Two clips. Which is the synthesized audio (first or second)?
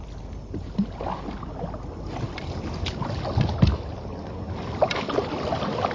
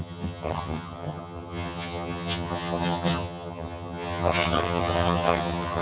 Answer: second